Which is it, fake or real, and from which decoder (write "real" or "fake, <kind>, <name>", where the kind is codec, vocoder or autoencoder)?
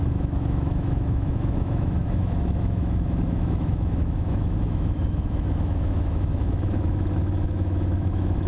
fake, autoencoder, DAC-VAE